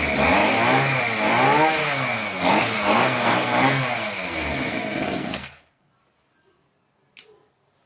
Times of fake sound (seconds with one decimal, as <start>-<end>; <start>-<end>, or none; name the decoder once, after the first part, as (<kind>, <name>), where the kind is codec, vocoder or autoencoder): 1.8-5.9 (codec, SNAC)